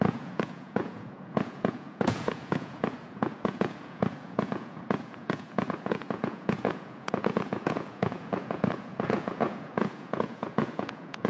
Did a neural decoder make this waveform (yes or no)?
yes